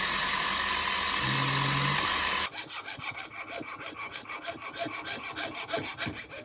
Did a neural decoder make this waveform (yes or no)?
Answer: no